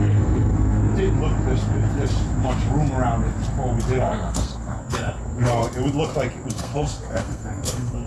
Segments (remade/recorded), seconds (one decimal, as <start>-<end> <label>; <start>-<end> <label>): 0.0-0.8 remade; 0.8-4.0 recorded; 4.0-5.6 remade; 5.6-6.5 recorded; 6.5-8.1 remade